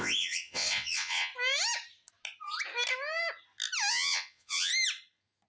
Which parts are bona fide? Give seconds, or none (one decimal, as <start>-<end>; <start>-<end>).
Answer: 1.3-3.9; 4.7-5.5